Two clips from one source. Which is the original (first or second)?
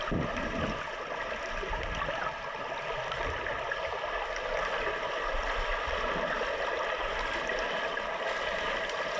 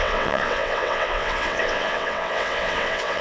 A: first